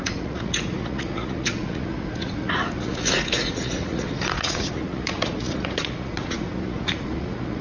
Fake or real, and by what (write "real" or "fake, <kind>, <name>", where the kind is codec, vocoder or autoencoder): fake, vocoder, Vocos